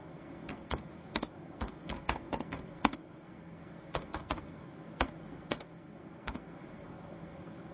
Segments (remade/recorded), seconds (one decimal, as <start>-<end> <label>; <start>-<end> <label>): 0.0-7.7 remade